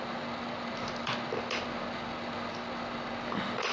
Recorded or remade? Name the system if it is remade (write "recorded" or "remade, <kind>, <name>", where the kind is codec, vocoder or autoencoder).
recorded